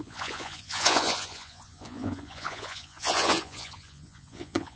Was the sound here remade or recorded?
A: remade